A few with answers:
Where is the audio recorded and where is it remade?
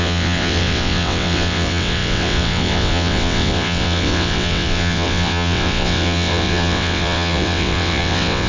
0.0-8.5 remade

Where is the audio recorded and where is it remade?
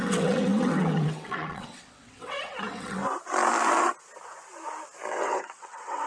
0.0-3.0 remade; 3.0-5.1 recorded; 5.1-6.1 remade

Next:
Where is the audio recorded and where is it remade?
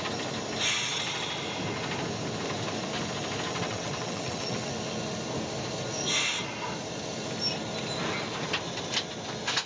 0.0-3.5 recorded; 3.5-4.7 remade; 4.7-9.7 recorded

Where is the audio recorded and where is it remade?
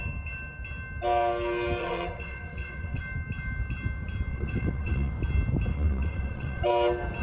0.0-1.8 recorded; 1.8-3.0 remade; 3.0-4.3 recorded; 4.3-5.1 remade; 5.1-5.7 recorded; 5.7-6.6 remade; 6.6-7.2 recorded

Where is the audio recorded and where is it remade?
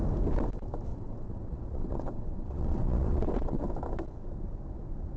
0.0-0.9 recorded; 0.9-3.6 remade; 3.6-5.2 recorded